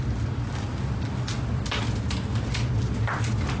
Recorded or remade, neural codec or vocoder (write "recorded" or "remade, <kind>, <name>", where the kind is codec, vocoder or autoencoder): recorded